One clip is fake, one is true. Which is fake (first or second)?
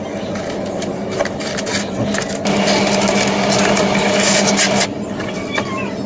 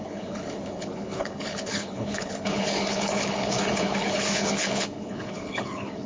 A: second